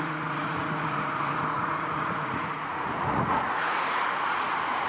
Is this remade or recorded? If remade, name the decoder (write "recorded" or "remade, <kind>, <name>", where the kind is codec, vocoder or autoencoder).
remade, vocoder, Vocos